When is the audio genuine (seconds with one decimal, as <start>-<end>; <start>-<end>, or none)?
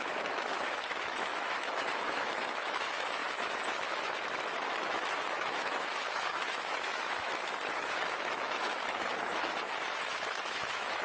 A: none